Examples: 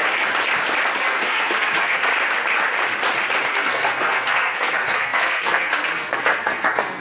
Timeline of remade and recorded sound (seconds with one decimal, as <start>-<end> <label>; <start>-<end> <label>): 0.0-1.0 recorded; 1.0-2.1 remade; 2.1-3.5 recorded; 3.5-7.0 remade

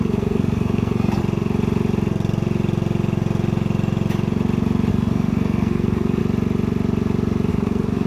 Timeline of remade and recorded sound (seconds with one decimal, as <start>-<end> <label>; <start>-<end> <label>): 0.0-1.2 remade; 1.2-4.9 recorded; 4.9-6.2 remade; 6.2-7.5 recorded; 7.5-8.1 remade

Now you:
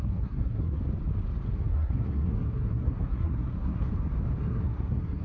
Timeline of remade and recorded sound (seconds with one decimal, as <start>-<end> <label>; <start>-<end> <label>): 0.0-0.8 remade; 0.8-1.5 recorded; 1.5-3.9 remade; 3.9-4.4 recorded; 4.4-5.2 remade